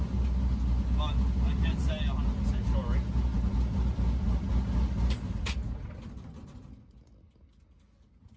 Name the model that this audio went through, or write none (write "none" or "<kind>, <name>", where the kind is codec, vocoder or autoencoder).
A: none